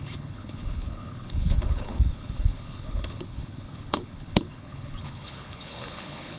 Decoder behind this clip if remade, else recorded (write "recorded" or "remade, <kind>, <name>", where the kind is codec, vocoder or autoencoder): remade, codec, HILCodec